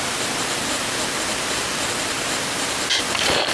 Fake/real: real